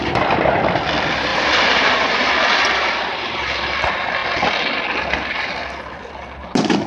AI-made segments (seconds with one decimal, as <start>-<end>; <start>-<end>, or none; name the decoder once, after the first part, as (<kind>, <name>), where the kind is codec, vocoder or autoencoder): 1.3-2.3 (vocoder, BigVGAN v2)